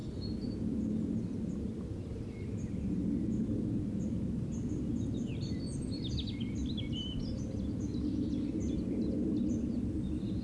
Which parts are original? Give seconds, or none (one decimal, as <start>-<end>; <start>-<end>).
0.0-10.4